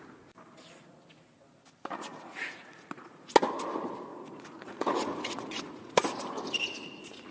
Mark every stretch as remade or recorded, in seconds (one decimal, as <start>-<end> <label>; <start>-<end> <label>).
0.0-2.1 recorded; 2.1-3.3 remade; 3.3-4.1 recorded; 4.1-5.9 remade; 5.9-7.3 recorded

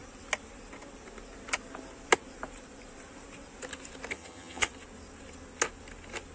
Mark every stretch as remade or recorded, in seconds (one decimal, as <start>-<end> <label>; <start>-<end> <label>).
0.0-4.1 recorded; 4.1-4.7 remade; 4.7-6.3 recorded